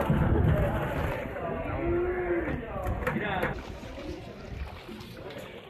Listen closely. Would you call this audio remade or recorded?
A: recorded